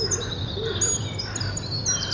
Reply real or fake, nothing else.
real